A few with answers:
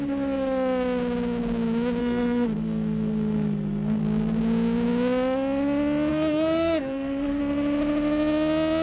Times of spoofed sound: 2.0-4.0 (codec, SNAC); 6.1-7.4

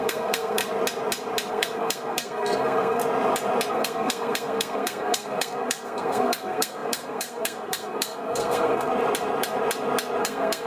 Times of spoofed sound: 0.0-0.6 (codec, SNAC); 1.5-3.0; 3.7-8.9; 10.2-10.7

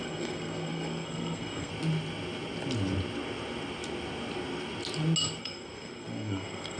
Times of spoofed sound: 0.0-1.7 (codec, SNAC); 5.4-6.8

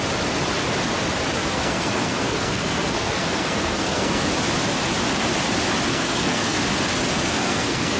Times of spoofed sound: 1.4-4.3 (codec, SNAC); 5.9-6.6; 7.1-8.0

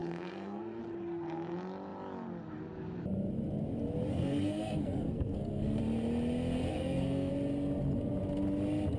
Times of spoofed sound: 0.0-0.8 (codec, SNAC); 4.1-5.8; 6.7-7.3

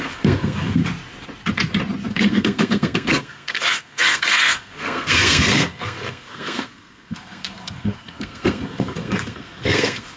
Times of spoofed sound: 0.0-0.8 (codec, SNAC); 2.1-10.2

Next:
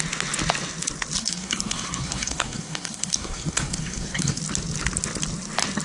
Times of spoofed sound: 1.2-4.4 (codec, SNAC)